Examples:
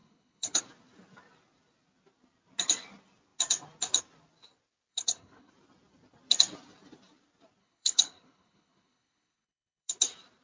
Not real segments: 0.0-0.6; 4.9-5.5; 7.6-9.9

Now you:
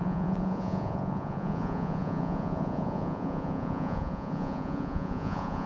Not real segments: 0.0-5.7

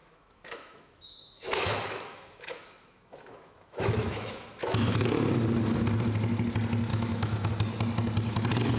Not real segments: 0.0-5.1; 6.9-7.5

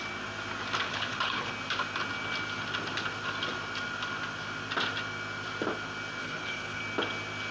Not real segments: 0.9-1.5; 6.2-6.8

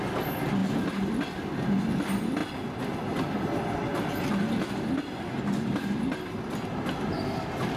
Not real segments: none

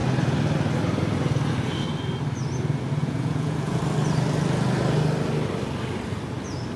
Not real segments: 3.0-3.8

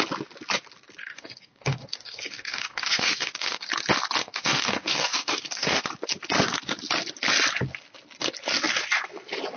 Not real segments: 1.0-3.7; 4.2-5.8